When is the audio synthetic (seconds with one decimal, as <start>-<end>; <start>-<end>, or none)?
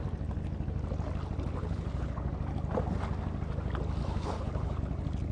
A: 1.6-2.3; 4.0-4.8